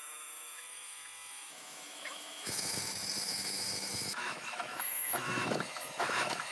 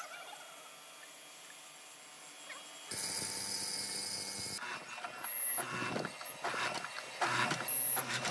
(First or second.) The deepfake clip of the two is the first